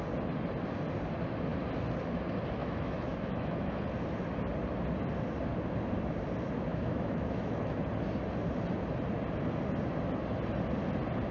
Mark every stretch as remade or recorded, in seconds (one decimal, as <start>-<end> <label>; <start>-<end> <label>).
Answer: 0.0-2.6 recorded; 2.6-3.8 remade; 3.8-6.7 recorded; 6.7-7.8 remade; 7.8-11.3 recorded